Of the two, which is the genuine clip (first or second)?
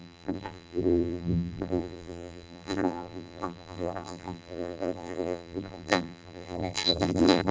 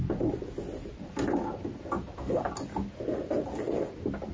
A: second